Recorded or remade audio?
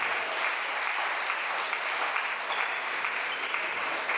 recorded